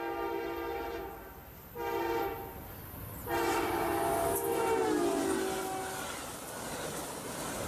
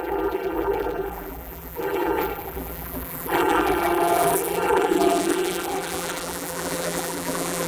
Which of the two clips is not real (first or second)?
second